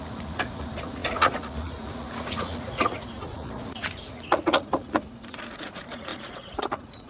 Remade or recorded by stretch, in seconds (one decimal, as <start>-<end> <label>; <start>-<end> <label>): 0.0-7.1 remade